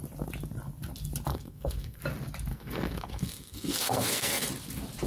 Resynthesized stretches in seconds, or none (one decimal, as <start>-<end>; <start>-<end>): 1.3-2.0; 2.5-4.5